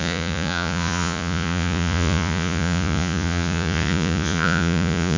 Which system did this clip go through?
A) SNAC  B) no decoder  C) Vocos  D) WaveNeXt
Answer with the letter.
C